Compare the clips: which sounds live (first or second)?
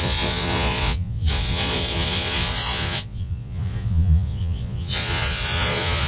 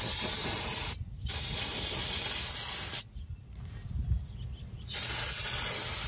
second